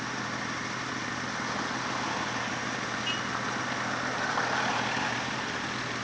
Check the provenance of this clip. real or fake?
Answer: real